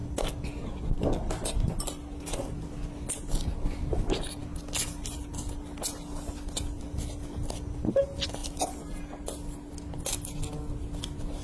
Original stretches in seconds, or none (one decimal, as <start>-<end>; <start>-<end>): 0.0-8.4; 9.0-11.4